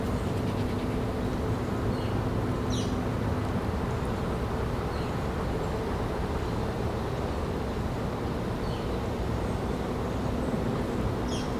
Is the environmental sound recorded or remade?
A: recorded